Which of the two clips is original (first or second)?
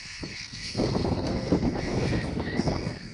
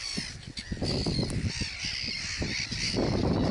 second